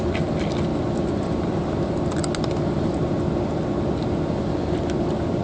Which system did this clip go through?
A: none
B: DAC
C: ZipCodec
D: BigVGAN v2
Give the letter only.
A